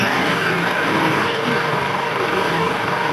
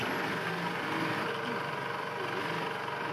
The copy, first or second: first